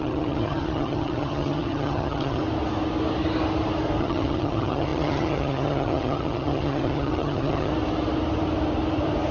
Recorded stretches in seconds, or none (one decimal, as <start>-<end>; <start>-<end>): 2.4-4.0; 7.7-9.3